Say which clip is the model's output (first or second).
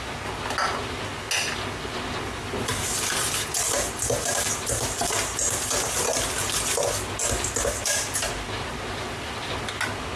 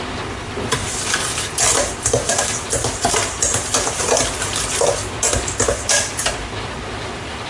second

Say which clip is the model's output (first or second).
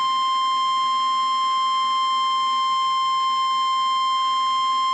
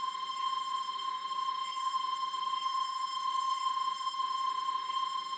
second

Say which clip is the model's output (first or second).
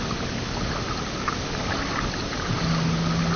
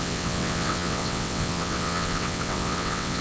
second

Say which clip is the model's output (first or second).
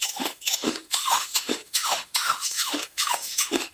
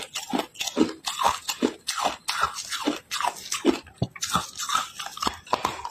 first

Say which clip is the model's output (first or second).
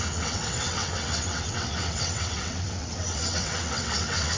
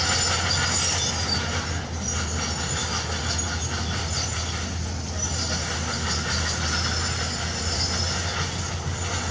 first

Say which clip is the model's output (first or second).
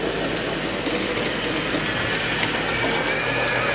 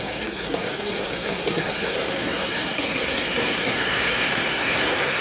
second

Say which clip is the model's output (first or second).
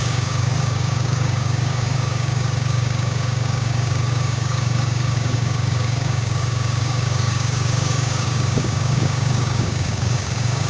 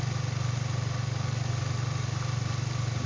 first